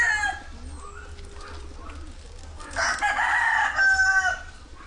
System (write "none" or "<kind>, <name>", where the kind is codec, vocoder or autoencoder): none